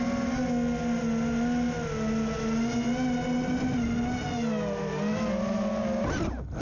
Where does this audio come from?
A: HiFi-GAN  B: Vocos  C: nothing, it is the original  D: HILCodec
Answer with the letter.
C